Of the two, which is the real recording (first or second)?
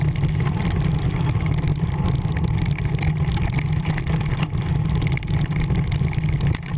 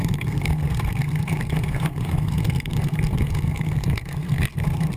first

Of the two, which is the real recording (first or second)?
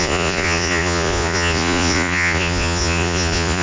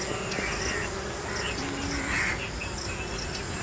second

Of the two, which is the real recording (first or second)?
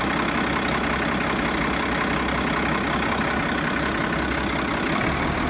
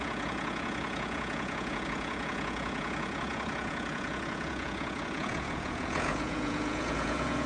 first